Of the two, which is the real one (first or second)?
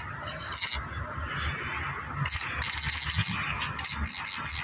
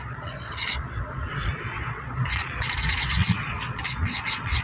first